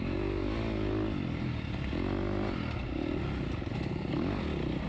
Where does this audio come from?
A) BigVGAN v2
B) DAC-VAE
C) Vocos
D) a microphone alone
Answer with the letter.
D